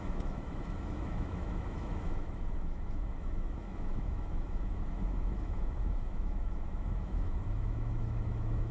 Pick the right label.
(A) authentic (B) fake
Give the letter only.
B